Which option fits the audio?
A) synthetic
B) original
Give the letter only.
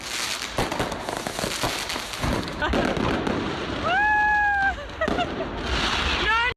B